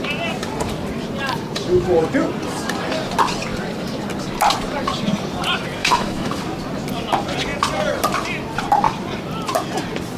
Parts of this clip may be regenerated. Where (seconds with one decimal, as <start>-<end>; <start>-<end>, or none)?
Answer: 5.8-6.4